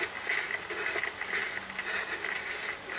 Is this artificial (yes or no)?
no